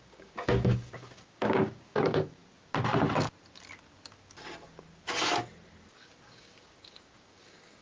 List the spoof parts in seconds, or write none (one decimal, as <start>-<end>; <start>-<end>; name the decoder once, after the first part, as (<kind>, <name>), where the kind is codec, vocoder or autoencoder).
0.0-2.4 (codec, DAC); 5.9-7.8